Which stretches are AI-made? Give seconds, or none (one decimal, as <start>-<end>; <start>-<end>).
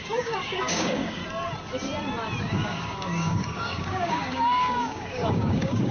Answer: 0.0-1.2; 2.4-5.9